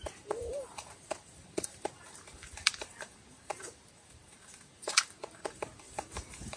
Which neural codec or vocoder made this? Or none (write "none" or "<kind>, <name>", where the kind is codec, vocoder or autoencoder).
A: vocoder, BigVGAN v2